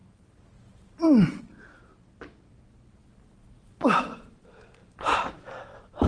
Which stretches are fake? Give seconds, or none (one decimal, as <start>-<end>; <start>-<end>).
0.0-1.4; 4.8-5.4